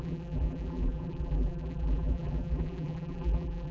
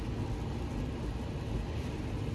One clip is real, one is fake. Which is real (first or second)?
second